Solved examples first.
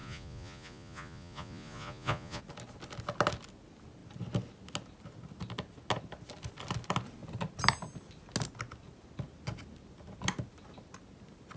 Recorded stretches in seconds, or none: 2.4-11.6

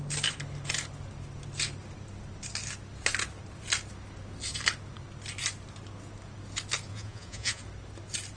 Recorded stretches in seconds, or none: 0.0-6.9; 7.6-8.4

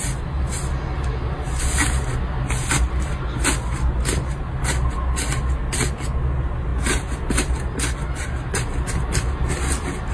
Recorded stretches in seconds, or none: 0.0-10.1

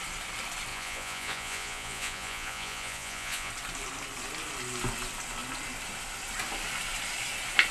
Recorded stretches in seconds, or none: 0.0-0.7; 3.5-7.7

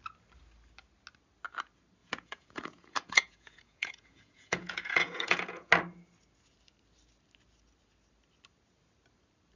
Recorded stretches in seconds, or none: 0.0-2.0; 5.7-9.6